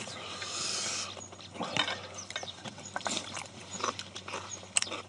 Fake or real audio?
real